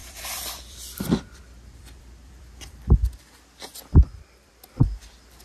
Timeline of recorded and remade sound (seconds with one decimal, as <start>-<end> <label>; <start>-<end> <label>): 0.0-3.2 remade; 3.2-4.0 recorded; 4.0-4.7 remade; 4.7-5.4 recorded